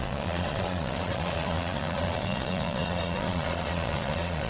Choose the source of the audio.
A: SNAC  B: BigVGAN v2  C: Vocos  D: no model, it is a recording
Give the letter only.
C